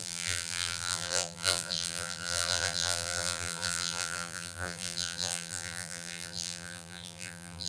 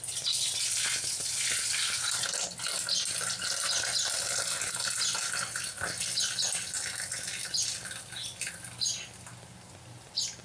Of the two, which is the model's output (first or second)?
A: first